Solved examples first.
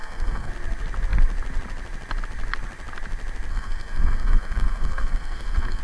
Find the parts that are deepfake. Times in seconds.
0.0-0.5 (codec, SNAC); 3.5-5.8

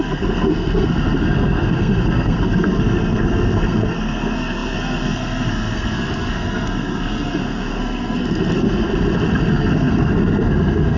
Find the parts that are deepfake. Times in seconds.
0.0-8.9 (codec, SNAC); 9.5-11.0

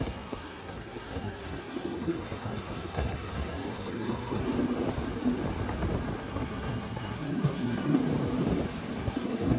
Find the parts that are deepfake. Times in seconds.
0.0-4.4 (codec, SNAC); 6.2-8.0; 9.0-9.6

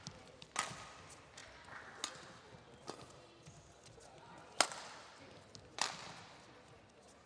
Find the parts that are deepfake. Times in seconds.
none

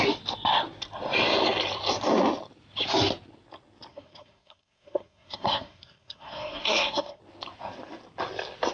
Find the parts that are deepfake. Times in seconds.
3.9-7.2 (codec, SNAC)

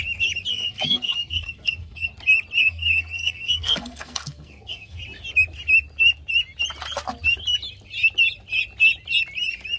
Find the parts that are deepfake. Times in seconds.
0.5-2.1 (codec, SNAC); 2.6-5.0